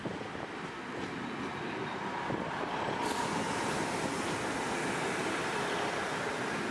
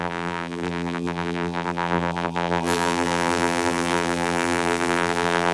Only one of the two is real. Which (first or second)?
first